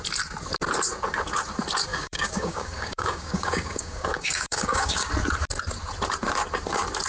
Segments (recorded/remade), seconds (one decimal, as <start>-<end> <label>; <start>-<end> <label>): 0.0-1.9 recorded; 1.9-5.1 remade; 5.1-7.1 recorded